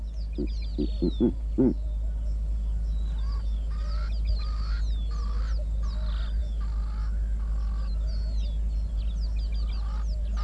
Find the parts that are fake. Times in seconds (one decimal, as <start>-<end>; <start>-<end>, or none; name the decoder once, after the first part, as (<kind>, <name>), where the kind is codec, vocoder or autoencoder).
none